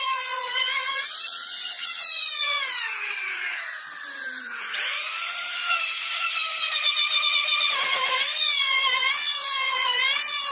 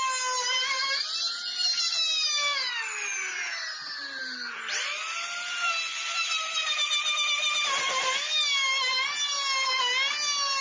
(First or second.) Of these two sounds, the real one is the second